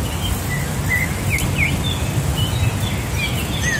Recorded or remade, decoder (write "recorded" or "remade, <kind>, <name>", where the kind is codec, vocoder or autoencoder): recorded